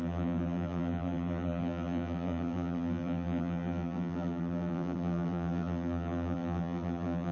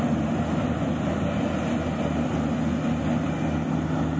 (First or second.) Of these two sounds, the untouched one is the second